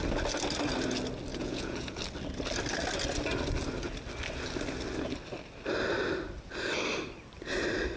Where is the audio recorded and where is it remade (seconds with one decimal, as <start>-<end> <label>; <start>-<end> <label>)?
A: 0.0-1.3 recorded; 1.3-2.0 remade; 2.0-8.0 recorded